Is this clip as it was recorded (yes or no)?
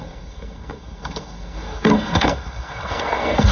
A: no